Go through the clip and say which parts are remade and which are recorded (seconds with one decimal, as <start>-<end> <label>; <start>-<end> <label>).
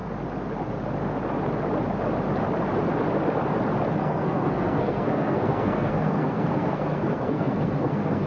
0.0-4.0 recorded; 4.0-8.3 remade